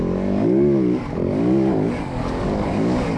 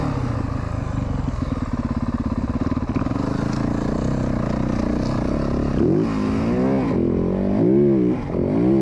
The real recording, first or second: second